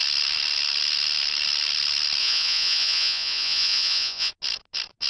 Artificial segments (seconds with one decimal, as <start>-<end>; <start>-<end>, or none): 2.2-4.3

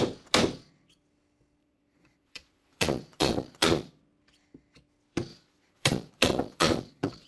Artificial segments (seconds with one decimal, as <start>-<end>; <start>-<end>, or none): 1.6-4.0; 5.3-7.3